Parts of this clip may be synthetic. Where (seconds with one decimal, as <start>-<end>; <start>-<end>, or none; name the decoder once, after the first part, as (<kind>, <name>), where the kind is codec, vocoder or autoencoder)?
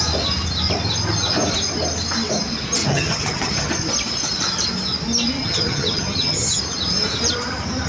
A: 2.8-3.7 (vocoder, HiFi-GAN); 5.4-6.6